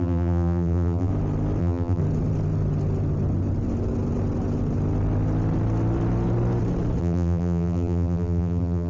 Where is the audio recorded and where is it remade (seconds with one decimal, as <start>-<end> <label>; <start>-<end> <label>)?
0.0-1.1 remade; 1.1-1.6 recorded; 1.6-2.0 remade; 2.0-7.0 recorded; 7.0-8.9 remade